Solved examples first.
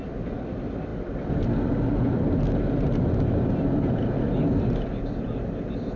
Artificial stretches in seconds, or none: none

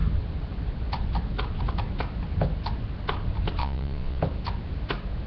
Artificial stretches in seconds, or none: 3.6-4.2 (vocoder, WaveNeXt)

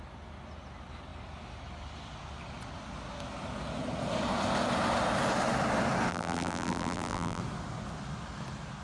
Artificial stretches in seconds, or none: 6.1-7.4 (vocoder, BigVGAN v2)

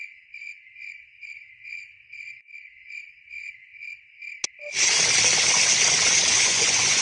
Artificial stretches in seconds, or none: 0.0-3.7 (vocoder, Vocos); 6.3-7.0

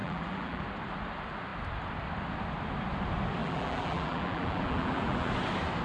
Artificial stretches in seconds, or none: 0.0-0.6 (vocoder, BigVGAN v2); 3.4-5.3

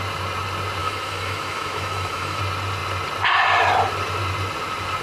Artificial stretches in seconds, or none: 0.8-2.4 (autoencoder, DAC-VAE)